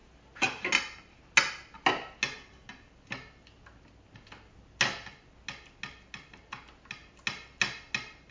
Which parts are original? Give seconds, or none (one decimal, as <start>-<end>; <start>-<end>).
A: 0.0-8.3